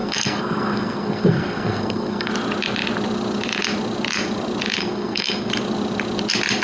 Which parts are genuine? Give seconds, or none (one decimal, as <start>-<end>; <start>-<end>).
2.3-4.8; 5.5-6.6